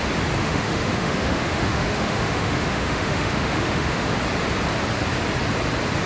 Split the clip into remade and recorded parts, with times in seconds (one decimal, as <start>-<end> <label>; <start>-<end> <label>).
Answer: 0.0-0.4 recorded; 0.4-4.1 remade; 4.1-6.1 recorded